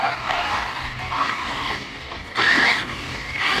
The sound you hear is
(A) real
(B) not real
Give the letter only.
B